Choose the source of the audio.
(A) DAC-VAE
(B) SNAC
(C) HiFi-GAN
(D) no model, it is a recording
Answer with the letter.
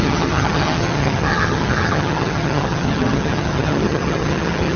C